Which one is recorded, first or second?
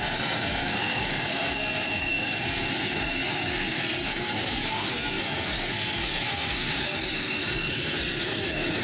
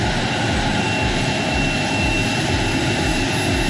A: second